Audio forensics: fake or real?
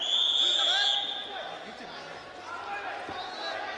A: real